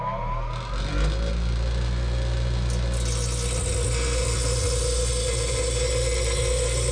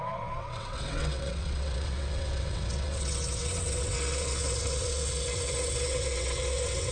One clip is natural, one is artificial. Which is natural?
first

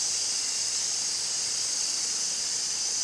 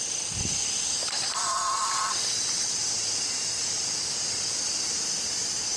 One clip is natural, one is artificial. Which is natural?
second